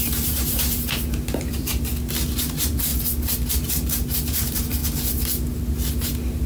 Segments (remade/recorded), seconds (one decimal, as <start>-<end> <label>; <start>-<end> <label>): 0.0-1.9 remade; 1.9-2.4 recorded; 2.4-2.9 remade; 2.9-3.5 recorded; 3.5-4.8 remade; 4.8-6.5 recorded